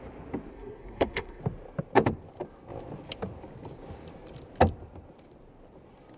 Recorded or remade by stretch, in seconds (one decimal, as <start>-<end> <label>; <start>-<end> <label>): 0.0-0.5 recorded; 0.5-1.4 remade; 1.4-6.2 recorded

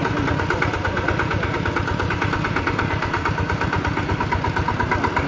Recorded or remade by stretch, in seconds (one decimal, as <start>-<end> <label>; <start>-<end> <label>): 0.0-5.3 recorded

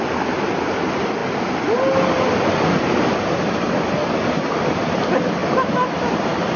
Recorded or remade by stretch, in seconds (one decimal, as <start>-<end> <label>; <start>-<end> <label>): 0.0-6.6 recorded

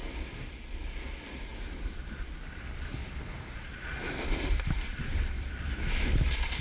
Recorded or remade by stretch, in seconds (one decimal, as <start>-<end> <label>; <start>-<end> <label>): 0.0-6.6 recorded

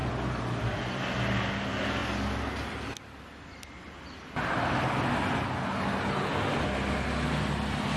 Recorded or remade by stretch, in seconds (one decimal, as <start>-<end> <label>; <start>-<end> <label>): 0.0-8.0 recorded